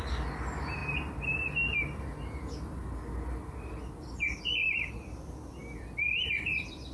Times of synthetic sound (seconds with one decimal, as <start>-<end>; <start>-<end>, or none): none